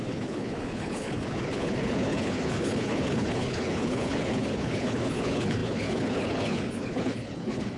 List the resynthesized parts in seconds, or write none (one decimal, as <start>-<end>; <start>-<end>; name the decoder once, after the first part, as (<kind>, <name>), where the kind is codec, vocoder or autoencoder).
0.0-7.8 (codec, HILCodec)